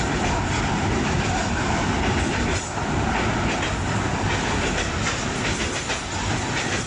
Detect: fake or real real